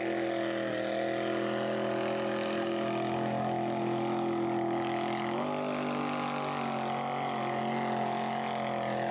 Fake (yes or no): no